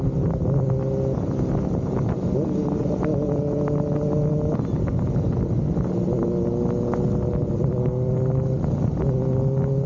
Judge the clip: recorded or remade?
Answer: recorded